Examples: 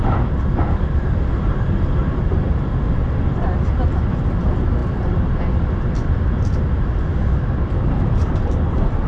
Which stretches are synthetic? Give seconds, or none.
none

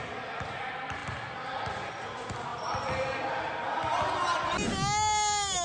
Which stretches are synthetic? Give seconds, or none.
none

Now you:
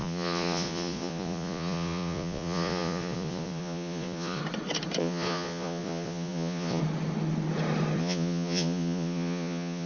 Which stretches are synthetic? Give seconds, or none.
0.0-4.4 (vocoder, Vocos); 5.0-6.8; 8.0-9.9

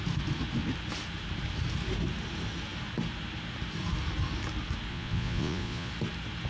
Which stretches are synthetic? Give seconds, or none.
4.9-5.9 (vocoder, Vocos)